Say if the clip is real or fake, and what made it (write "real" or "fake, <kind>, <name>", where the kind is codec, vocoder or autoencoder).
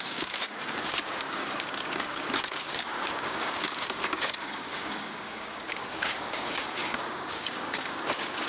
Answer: fake, codec, DAC